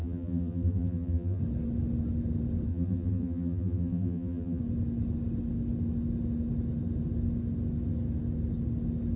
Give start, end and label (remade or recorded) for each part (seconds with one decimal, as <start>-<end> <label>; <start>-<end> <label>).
0.0-1.4 remade; 1.4-2.7 recorded; 2.7-4.6 remade; 4.6-9.2 recorded